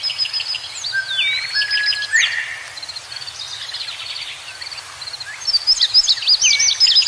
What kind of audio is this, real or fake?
real